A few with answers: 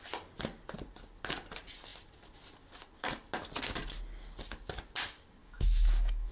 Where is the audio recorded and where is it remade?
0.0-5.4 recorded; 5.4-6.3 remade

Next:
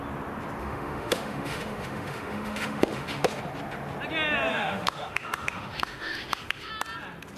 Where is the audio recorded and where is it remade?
0.0-0.6 recorded; 0.6-3.4 remade; 3.4-4.5 recorded; 4.5-6.7 remade; 6.7-7.4 recorded

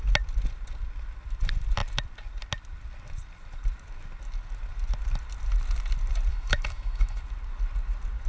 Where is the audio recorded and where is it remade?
0.0-6.3 recorded; 6.3-7.2 remade; 7.2-8.3 recorded

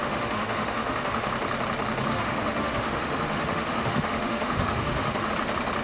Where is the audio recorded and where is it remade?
0.0-1.3 remade; 1.3-2.1 recorded; 2.1-5.3 remade; 5.3-5.8 recorded

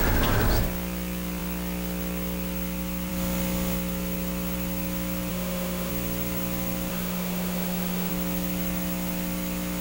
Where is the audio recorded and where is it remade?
0.0-5.3 recorded; 5.3-5.9 remade; 5.9-6.9 recorded; 6.9-8.1 remade; 8.1-9.8 recorded

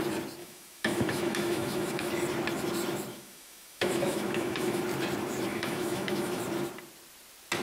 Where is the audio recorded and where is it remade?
0.0-0.4 recorded; 0.4-2.1 remade; 2.1-3.1 recorded; 3.1-4.8 remade; 4.8-5.5 recorded; 5.5-6.4 remade; 6.4-7.6 recorded

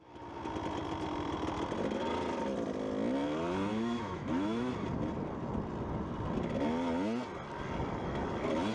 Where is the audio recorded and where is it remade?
0.0-3.7 recorded; 3.7-4.7 remade; 4.7-8.7 recorded